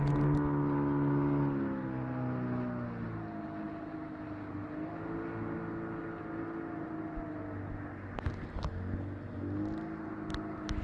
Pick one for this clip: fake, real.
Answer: real